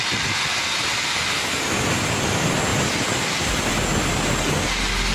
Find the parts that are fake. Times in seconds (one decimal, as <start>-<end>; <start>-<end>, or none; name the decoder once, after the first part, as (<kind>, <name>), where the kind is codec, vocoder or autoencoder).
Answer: 2.7-3.5 (vocoder, BigVGAN v2)